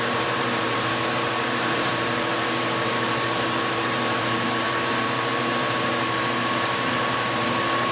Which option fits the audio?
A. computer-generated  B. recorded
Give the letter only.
A